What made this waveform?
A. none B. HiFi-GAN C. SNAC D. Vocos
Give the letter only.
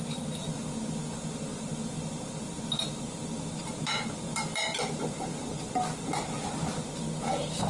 A